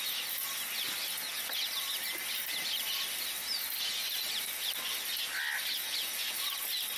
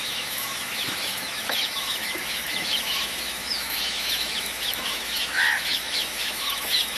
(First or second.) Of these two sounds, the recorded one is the first